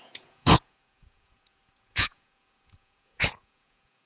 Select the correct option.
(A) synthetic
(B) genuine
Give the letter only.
A